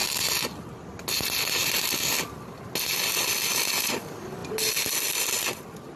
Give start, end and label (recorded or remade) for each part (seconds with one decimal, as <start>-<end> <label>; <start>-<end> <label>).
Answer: 0.0-3.5 recorded; 3.5-4.0 remade; 4.0-6.0 recorded